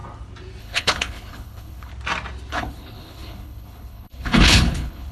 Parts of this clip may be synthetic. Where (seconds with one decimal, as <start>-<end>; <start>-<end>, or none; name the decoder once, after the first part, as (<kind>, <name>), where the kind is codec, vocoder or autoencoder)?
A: 0.6-1.9 (codec, HILCodec); 2.5-5.1

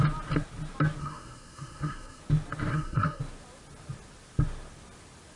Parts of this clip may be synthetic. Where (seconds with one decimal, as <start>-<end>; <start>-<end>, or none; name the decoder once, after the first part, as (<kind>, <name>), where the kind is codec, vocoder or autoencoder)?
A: 1.0-2.2 (codec, SNAC); 2.7-3.2